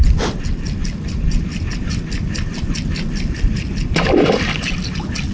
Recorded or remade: recorded